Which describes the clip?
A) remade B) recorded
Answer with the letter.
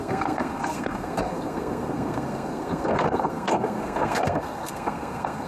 A